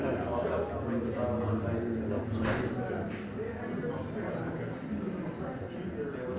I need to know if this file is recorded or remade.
recorded